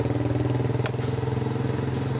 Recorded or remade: recorded